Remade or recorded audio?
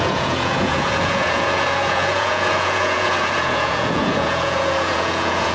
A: remade